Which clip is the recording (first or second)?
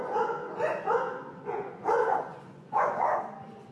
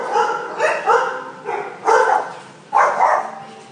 second